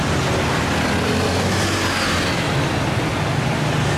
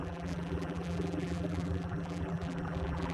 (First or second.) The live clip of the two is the first